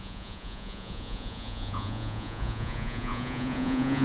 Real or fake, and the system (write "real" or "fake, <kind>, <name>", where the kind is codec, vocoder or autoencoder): fake, vocoder, Vocos